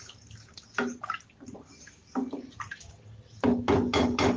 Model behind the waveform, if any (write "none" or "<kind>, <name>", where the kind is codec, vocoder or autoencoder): none